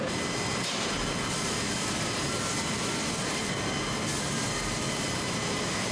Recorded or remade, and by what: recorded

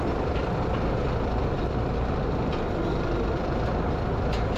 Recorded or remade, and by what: recorded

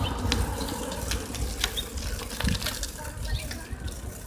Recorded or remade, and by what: recorded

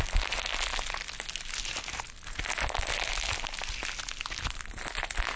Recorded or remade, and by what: recorded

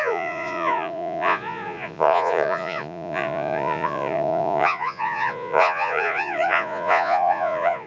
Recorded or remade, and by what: remade, vocoder, Vocos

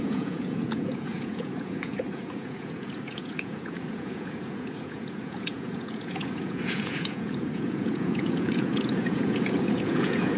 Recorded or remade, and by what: remade, vocoder, Vocos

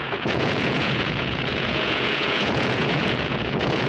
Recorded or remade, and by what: remade, vocoder, Vocos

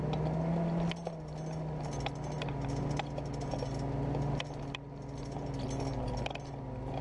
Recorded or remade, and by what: recorded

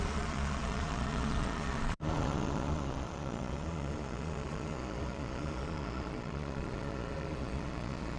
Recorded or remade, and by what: remade, vocoder, Vocos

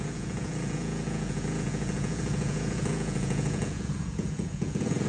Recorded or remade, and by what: remade, vocoder, Vocos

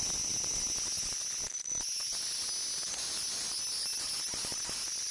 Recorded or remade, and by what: recorded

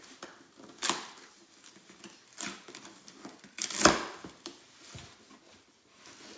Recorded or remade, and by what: recorded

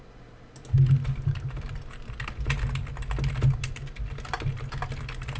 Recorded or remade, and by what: recorded